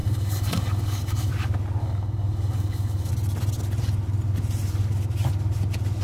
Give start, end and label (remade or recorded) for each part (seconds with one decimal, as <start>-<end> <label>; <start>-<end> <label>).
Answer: 0.0-1.3 remade; 1.3-1.8 recorded; 1.8-3.1 remade; 3.1-6.0 recorded